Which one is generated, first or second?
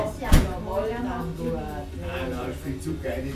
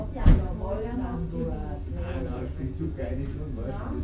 second